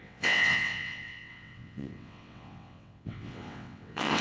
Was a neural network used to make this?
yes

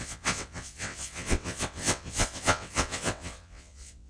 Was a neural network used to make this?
yes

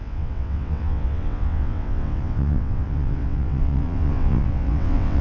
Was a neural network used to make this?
yes